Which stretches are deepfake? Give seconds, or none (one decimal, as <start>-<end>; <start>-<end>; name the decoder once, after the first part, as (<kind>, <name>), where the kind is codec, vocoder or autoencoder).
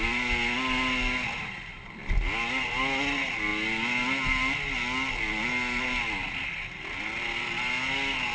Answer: none